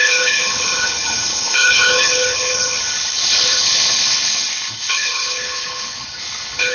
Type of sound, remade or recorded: remade